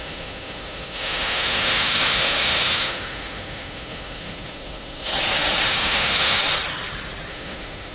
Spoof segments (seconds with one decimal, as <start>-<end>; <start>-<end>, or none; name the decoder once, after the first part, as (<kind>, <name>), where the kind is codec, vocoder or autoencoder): 0.0-5.1 (autoencoder, DAC-VAE); 5.7-6.4; 7.3-7.9